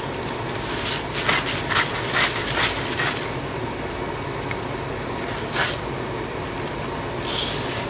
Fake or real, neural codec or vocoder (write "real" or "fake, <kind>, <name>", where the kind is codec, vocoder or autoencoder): real